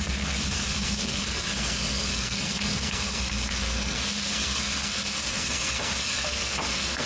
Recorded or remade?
remade